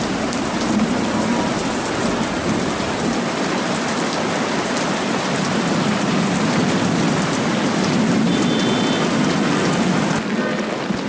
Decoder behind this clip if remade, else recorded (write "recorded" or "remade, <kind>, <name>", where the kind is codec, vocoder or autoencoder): recorded